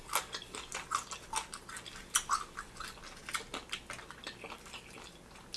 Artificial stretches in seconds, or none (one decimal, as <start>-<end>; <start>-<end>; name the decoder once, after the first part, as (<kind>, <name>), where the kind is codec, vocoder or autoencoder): none